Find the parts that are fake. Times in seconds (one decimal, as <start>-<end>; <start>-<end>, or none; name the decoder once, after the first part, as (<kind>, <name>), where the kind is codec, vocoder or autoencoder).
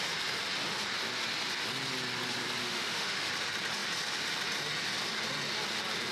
2.6-3.3 (autoencoder, DAC-VAE)